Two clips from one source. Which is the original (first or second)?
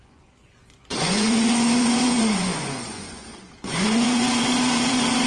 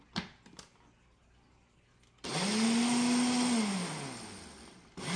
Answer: second